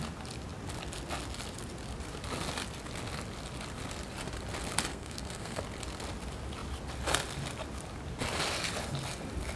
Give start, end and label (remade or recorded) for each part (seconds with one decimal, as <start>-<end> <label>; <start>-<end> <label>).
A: 0.0-4.9 recorded; 4.9-5.6 remade; 5.6-9.6 recorded